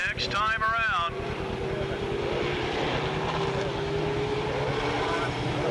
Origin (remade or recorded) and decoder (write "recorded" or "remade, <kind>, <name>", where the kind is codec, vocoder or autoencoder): recorded